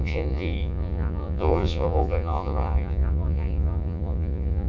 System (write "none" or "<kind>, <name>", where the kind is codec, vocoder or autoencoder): vocoder, Vocos